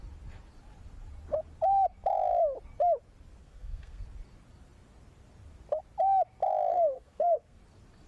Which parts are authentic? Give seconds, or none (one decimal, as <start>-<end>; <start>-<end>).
0.0-3.4; 4.0-6.7; 7.6-8.1